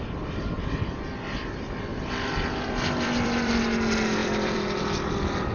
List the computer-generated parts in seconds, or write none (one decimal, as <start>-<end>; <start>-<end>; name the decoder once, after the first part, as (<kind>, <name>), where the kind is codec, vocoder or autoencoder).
1.9-3.6 (vocoder, BigVGAN v2); 4.2-5.1